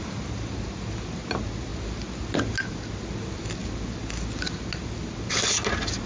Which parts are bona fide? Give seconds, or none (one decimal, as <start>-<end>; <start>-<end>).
0.0-6.1